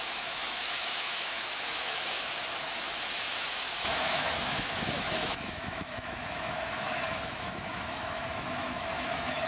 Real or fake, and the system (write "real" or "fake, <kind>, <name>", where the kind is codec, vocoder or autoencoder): fake, autoencoder, DAC-VAE